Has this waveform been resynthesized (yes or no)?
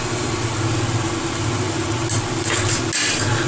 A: no